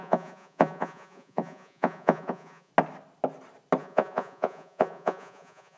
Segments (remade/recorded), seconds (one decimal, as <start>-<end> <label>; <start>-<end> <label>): 0.0-2.7 remade; 2.7-3.8 recorded; 3.8-5.8 remade